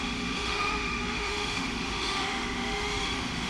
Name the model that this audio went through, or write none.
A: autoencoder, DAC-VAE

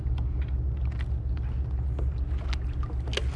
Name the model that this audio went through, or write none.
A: none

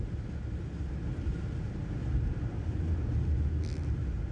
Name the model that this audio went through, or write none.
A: none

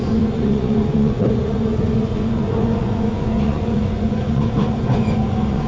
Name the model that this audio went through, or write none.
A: vocoder, Vocos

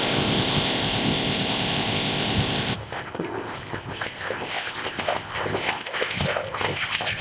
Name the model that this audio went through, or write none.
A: codec, ZipCodec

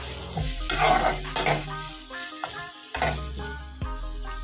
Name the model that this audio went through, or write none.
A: none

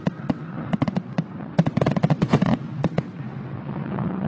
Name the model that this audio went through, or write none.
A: vocoder, WaveNeXt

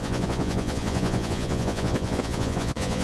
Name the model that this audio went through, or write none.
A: vocoder, Vocos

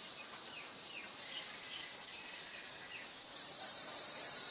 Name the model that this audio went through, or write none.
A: vocoder, BigVGAN v2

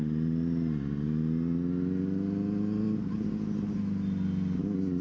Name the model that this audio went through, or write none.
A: none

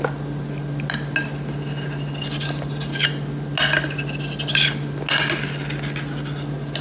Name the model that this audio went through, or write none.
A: none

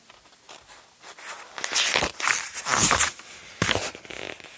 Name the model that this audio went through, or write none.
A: none